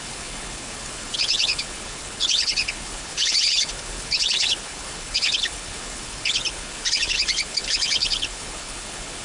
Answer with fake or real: fake